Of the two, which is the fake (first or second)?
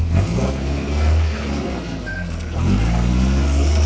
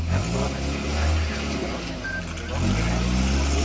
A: first